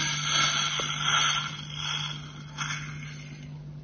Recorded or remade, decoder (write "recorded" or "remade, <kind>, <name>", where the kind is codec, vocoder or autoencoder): recorded